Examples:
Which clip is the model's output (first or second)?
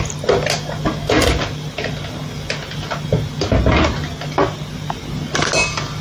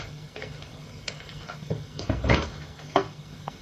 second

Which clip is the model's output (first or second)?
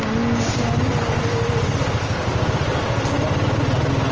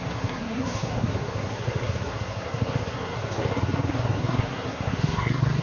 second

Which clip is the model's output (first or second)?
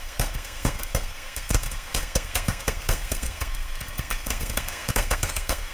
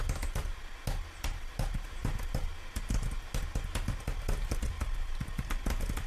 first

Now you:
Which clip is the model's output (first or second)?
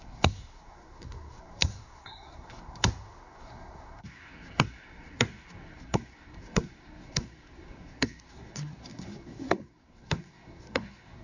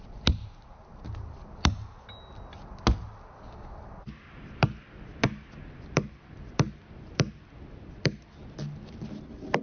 first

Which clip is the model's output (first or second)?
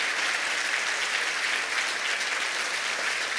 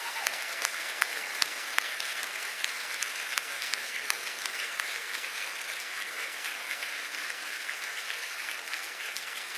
second